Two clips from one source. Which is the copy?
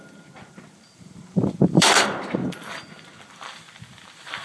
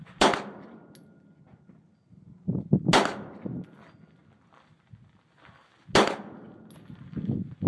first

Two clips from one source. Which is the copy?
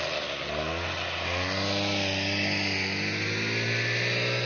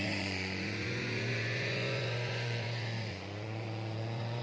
second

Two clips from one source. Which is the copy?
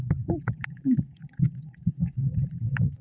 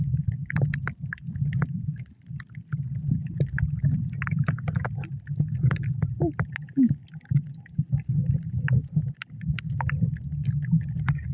first